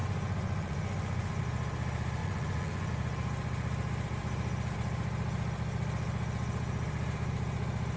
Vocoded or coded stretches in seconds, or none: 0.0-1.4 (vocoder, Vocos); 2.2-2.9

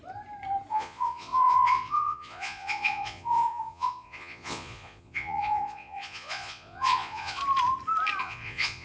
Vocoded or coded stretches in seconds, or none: 0.7-7.4 (vocoder, Vocos); 8.2-8.8

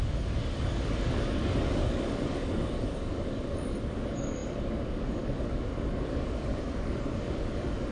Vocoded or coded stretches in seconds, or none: 0.0-7.9 (codec, DAC)